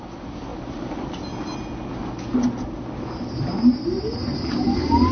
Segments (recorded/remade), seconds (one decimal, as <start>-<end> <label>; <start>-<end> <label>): 0.0-5.1 recorded